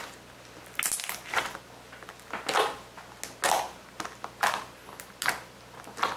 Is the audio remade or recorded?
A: recorded